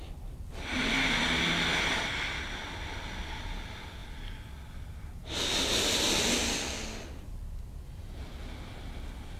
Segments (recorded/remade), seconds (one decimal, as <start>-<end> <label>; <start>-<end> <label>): 0.0-9.4 recorded